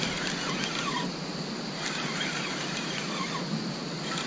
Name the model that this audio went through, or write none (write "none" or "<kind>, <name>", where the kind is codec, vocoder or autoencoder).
none